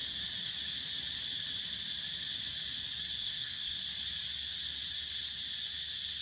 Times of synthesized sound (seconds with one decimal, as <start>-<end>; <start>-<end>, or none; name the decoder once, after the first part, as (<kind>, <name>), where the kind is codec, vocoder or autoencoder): 3.2-3.8 (codec, SNAC)